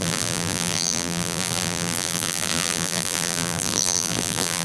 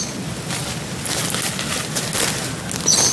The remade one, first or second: first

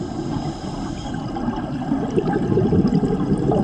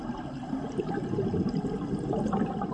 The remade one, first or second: first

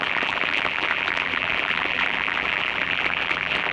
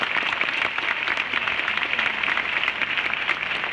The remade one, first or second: first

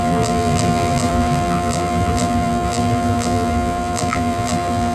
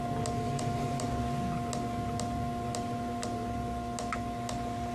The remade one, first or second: first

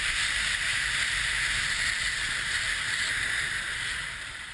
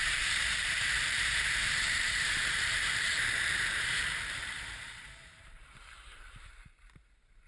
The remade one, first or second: second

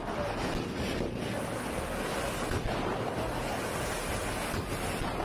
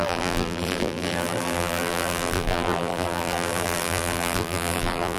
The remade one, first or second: second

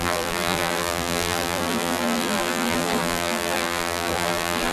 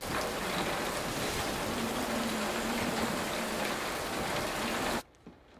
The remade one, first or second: first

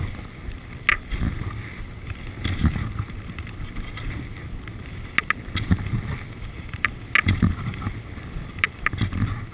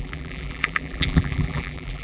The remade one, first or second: second